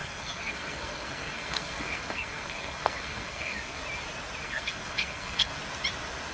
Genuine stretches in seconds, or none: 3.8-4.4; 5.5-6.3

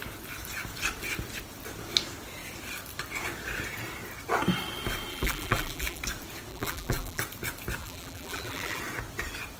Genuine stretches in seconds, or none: 0.0-5.1; 6.0-6.5; 7.2-7.8; 8.8-9.6